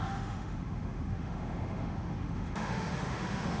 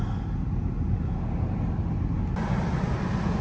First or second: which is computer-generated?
first